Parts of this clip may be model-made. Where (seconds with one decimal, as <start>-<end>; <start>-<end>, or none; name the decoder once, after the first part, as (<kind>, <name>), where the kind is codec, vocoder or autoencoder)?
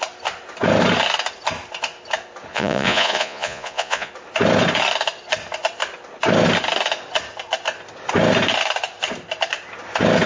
2.5-4.1 (vocoder, Vocos)